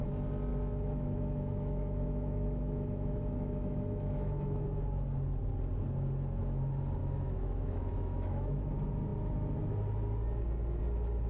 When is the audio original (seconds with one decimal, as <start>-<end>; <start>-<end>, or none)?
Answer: 0.0-0.5; 4.8-7.0; 8.7-11.3